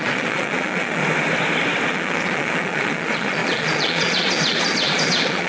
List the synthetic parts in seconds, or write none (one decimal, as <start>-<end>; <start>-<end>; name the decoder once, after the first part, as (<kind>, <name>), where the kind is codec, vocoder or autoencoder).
0.0-1.0 (vocoder, Vocos); 1.9-5.5